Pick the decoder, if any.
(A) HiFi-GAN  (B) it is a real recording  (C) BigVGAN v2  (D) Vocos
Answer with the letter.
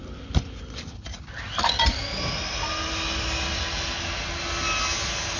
B